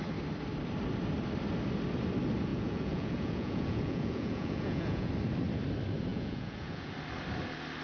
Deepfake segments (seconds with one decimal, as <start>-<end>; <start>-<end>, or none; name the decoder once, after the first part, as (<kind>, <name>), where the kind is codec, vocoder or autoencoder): 2.5-5.1 (vocoder, Vocos); 6.1-6.9